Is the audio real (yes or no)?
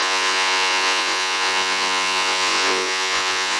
no